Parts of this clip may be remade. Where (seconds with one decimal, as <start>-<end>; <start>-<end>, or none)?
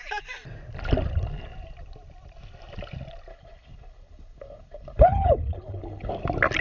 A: 3.3-6.1